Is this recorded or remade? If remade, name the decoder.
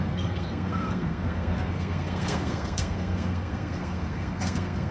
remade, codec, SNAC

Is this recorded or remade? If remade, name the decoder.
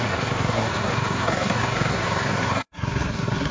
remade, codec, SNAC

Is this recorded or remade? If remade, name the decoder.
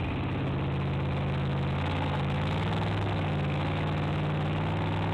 recorded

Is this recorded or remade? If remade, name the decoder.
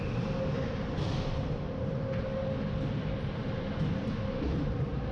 recorded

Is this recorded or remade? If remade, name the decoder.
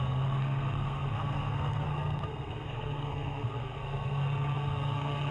remade, codec, SNAC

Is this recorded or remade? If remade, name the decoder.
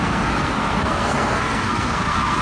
remade, codec, SNAC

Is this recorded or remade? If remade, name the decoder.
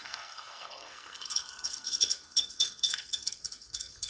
remade, codec, SNAC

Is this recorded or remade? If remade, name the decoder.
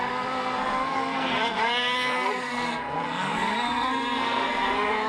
remade, codec, SNAC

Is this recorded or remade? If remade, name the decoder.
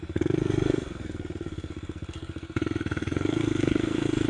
remade, codec, SNAC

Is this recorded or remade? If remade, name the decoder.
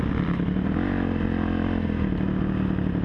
recorded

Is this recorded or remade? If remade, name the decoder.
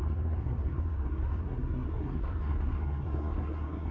remade, codec, SNAC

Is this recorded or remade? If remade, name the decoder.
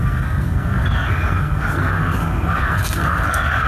remade, codec, SNAC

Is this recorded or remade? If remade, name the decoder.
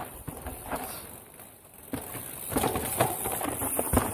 recorded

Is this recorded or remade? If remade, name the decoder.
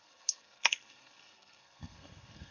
remade, codec, SNAC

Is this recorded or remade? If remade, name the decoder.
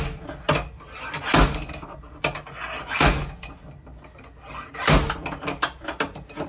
recorded